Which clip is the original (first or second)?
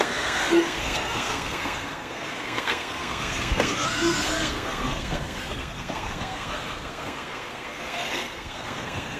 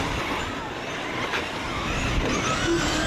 second